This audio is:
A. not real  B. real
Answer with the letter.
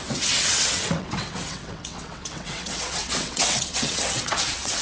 A